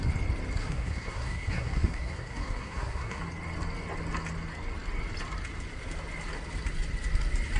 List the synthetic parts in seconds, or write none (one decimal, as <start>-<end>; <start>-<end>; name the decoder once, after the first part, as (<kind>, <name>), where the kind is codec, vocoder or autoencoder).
0.6-3.2 (codec, SNAC)